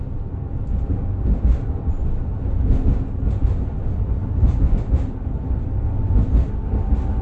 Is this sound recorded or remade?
recorded